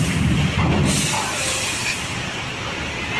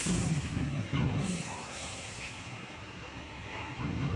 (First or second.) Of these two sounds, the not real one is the second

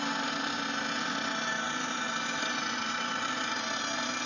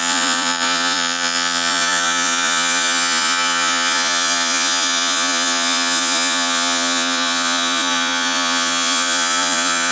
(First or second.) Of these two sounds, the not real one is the second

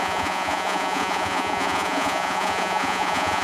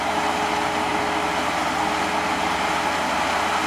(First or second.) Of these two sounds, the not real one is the first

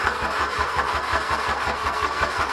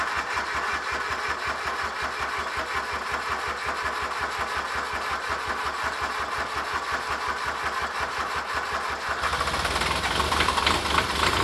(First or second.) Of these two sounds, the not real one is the first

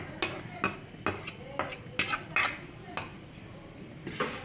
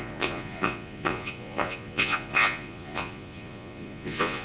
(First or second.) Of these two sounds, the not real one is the second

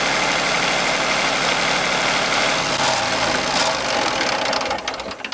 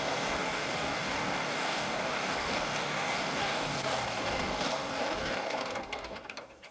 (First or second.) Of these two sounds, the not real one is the second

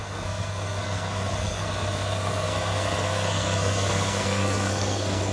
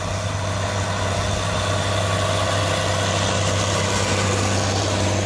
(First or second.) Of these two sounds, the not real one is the first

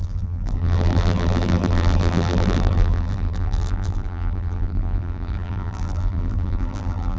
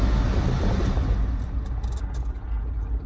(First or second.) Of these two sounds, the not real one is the first